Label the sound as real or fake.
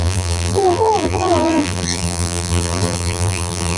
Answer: fake